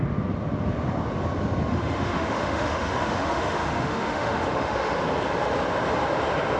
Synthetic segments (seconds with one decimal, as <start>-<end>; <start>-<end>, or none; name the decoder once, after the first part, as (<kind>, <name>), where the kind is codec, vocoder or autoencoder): 1.7-5.0 (autoencoder, DAC-VAE)